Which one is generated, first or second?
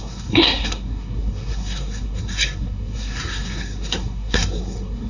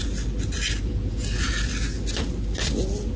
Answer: first